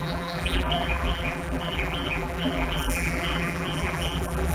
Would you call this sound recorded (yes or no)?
no